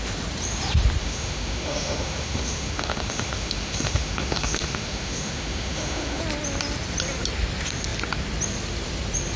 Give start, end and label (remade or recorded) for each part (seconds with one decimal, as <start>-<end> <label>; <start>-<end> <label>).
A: 0.0-1.0 recorded; 1.0-6.2 remade; 6.2-9.4 recorded